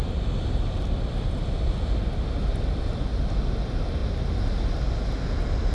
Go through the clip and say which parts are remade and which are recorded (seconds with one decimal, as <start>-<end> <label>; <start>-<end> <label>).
0.0-5.7 recorded